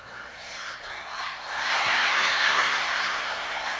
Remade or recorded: remade